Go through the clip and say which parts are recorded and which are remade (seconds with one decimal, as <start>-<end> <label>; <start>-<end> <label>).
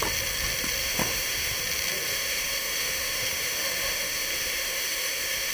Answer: 0.0-0.8 recorded; 0.8-1.6 remade; 1.6-2.1 recorded; 2.1-5.5 remade